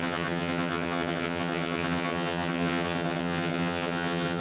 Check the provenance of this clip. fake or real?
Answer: fake